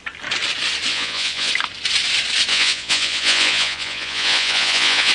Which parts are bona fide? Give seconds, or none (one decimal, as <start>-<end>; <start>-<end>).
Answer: 0.0-0.9; 1.5-2.5

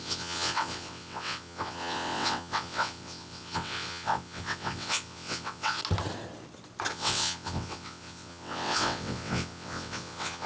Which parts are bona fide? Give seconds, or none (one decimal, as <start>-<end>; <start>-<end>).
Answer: 5.8-6.9